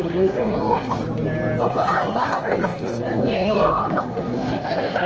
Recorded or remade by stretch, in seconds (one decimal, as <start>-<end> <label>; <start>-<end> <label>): 0.0-1.0 remade; 1.0-1.6 recorded; 1.6-5.1 remade

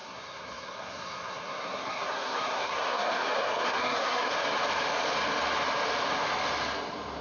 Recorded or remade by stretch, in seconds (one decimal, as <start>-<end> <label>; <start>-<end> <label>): 0.0-4.3 remade; 4.3-7.2 recorded